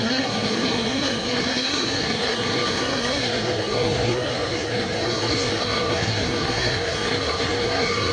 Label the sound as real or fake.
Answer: fake